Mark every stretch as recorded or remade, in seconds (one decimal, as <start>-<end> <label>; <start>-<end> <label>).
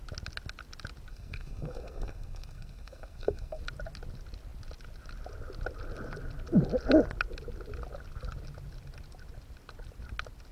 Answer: 0.0-1.1 recorded; 1.1-3.6 remade; 3.6-10.5 recorded